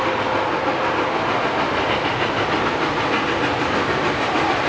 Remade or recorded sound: recorded